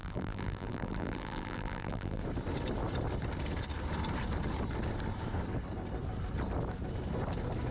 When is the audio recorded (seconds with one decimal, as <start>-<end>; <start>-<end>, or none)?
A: 2.2-7.7